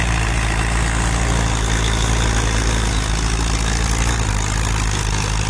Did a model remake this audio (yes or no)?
no